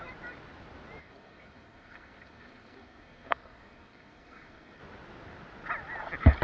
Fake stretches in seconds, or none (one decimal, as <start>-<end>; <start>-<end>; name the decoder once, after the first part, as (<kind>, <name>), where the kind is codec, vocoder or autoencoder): 1.0-4.8 (codec, SNAC)